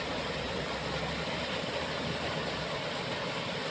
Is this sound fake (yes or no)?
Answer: no